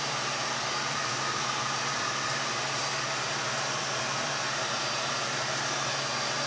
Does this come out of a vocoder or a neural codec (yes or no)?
yes